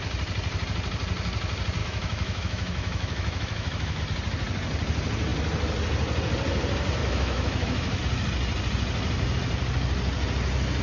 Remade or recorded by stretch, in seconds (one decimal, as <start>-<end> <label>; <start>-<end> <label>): 0.0-1.8 recorded; 1.8-4.0 remade; 4.0-7.0 recorded; 7.0-8.0 remade; 8.0-10.8 recorded